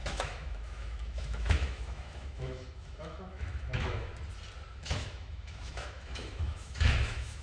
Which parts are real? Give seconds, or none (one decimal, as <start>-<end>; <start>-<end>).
4.1-4.8